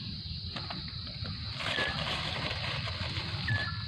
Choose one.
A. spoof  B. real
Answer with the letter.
B